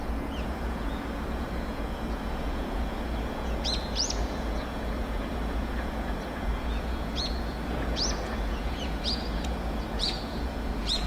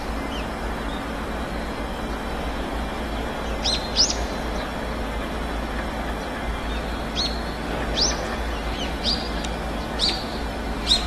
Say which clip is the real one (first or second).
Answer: second